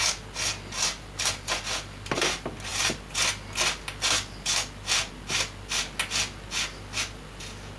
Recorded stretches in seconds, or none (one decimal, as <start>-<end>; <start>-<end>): 0.0-7.8